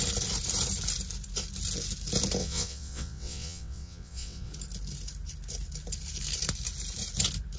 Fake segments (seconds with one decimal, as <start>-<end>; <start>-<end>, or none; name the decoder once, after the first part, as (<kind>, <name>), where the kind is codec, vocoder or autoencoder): 2.4-4.5 (vocoder, WaveNeXt)